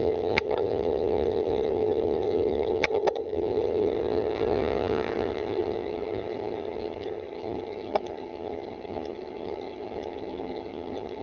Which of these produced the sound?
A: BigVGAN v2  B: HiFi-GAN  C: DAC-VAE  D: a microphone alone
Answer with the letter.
B